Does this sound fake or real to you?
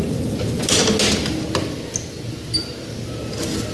real